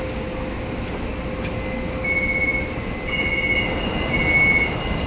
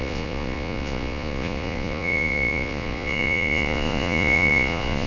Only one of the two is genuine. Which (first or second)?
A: first